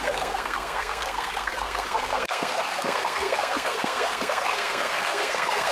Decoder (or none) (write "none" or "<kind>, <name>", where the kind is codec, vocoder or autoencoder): codec, SNAC